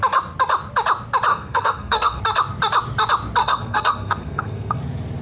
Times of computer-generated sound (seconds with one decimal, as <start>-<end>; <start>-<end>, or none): 1.3-2.2; 3.4-4.8